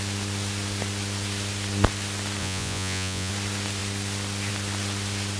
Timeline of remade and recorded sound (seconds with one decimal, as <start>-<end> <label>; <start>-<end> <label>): 0.0-2.4 recorded; 2.4-3.3 remade; 3.3-5.4 recorded